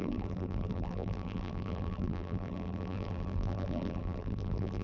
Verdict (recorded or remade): remade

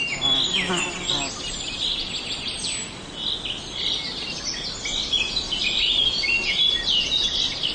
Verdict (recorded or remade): recorded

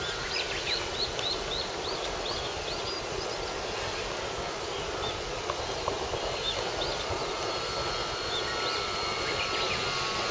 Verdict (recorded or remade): remade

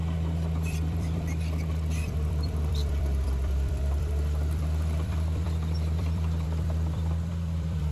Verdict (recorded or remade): remade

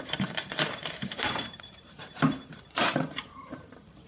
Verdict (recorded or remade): remade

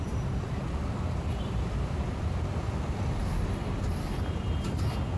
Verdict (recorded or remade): remade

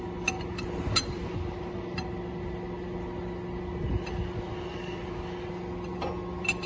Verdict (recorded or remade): recorded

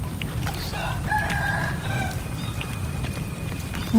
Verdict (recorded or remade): remade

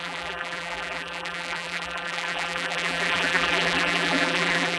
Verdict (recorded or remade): remade